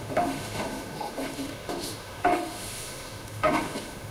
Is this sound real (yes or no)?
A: no